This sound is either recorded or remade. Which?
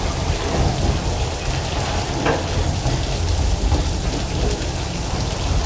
recorded